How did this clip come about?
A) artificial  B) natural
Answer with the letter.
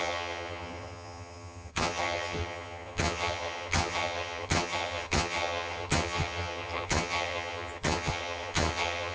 A